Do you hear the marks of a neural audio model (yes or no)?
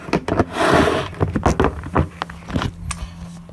no